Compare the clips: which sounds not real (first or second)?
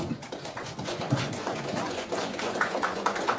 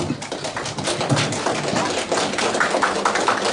first